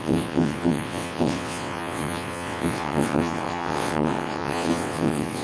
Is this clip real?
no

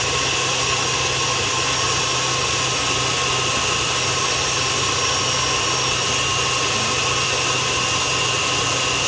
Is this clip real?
yes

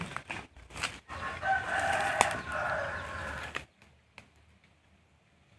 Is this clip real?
yes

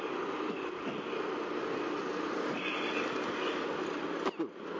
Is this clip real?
yes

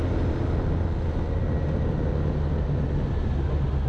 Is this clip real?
yes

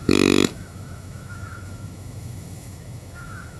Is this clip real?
no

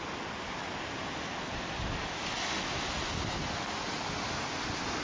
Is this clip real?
yes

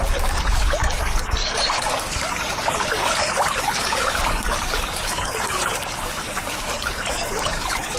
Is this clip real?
no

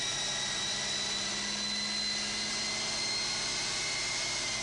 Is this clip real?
yes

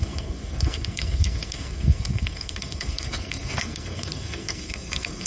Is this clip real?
no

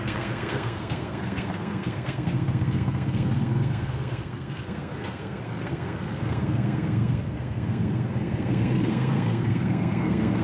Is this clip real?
no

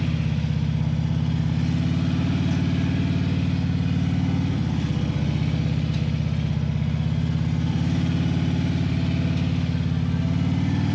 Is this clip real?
yes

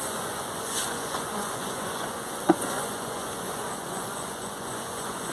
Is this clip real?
no